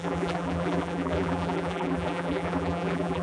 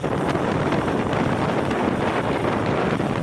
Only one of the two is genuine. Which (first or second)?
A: second